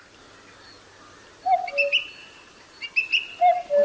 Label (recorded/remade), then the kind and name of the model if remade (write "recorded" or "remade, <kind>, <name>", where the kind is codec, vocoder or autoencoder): recorded